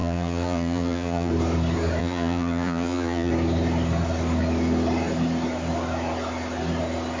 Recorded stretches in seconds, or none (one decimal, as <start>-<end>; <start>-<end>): 1.3-2.0; 3.3-7.2